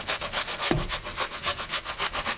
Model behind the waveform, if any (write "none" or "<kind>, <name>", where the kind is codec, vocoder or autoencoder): codec, SNAC